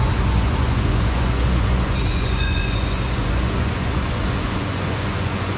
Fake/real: fake